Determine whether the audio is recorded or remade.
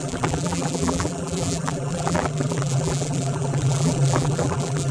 remade